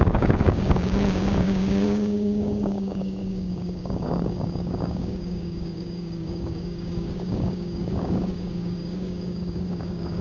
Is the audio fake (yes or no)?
yes